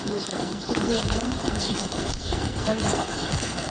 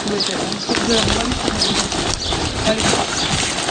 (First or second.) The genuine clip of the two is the second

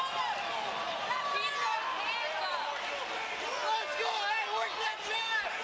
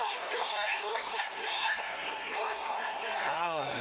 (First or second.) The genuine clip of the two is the first